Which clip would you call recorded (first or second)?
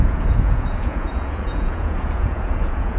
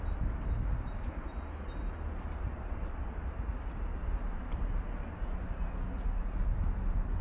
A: second